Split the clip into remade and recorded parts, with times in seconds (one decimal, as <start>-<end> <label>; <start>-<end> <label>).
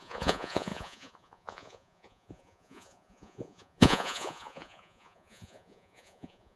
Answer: 0.0-6.6 remade